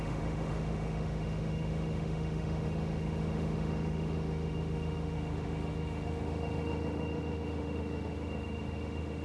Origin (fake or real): fake